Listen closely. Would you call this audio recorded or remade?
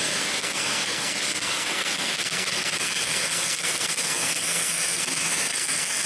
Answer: remade